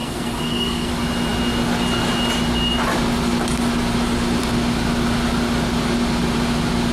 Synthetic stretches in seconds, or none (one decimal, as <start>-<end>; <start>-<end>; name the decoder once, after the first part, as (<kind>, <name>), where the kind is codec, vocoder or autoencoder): 0.0-0.9 (codec, SNAC)